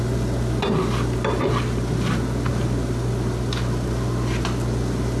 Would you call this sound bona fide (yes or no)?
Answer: yes